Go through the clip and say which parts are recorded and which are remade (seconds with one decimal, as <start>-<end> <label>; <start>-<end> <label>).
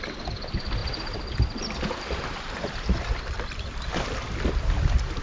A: 0.0-5.2 recorded